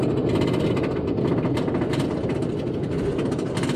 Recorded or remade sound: recorded